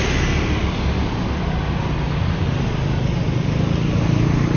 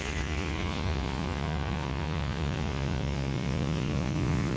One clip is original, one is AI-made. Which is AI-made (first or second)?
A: second